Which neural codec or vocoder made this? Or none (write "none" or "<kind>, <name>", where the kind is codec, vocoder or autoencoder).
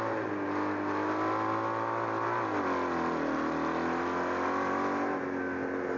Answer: none